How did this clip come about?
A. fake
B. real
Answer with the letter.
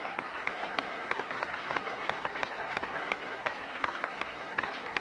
A